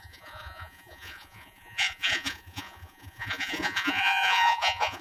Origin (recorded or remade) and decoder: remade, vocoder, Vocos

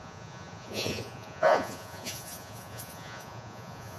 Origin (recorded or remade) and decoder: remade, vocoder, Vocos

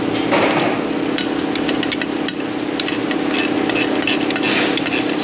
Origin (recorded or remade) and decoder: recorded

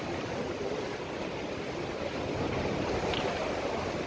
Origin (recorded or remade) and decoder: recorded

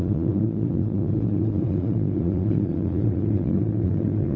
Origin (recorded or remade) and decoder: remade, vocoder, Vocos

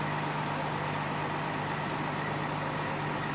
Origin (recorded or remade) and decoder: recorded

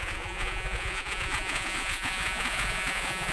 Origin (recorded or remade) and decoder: remade, vocoder, Vocos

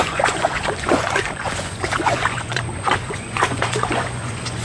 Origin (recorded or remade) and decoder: remade, vocoder, Vocos